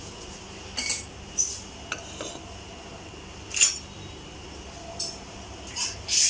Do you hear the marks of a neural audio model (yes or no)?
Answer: no